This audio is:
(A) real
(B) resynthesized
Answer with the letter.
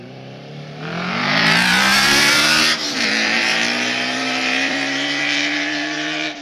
B